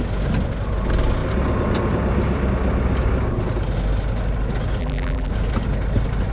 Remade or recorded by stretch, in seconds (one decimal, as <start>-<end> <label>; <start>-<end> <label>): 0.0-4.8 recorded; 4.8-5.3 remade; 5.3-6.3 recorded